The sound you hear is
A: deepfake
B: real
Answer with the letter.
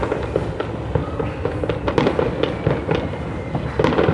B